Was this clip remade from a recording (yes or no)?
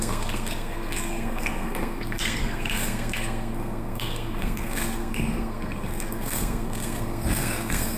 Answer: yes